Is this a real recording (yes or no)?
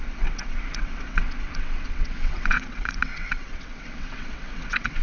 no